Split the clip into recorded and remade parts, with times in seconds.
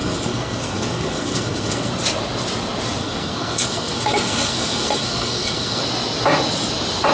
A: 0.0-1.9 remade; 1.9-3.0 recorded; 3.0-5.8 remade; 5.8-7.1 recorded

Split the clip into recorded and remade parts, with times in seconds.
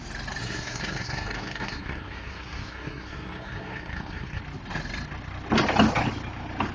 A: 0.0-0.4 recorded; 0.4-4.4 remade; 4.4-6.7 recorded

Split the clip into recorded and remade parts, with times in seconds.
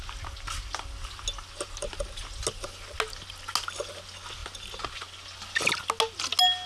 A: 0.0-6.7 recorded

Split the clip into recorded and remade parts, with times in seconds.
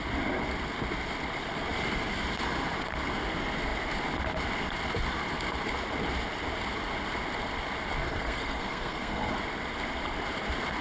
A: 0.0-8.0 recorded; 8.0-9.3 remade; 9.3-10.8 recorded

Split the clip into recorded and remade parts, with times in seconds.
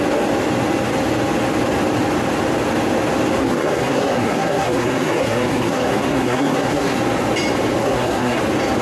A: 0.0-3.4 recorded; 3.4-7.0 remade; 7.0-7.8 recorded; 7.8-8.4 remade; 8.4-8.8 recorded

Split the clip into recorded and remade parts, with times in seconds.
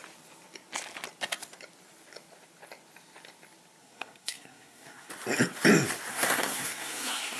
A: 0.0-3.8 recorded; 3.8-5.1 remade; 5.1-6.1 recorded; 6.1-7.4 remade